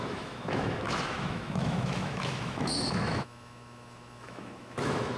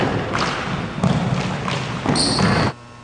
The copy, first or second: first